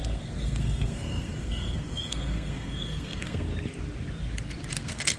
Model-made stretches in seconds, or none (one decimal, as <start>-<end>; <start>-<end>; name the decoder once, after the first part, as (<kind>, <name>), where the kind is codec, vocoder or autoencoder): 0.0-3.5 (codec, SNAC); 4.7-5.2